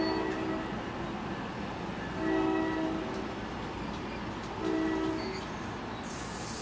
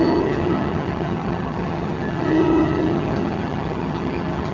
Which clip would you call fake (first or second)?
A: second